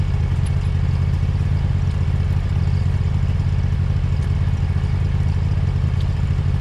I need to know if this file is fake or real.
real